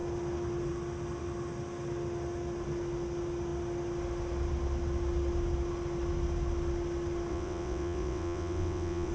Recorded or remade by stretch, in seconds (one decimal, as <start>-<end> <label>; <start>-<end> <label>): 0.0-7.3 recorded; 7.3-9.1 remade